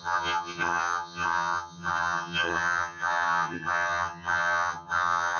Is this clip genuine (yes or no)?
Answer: no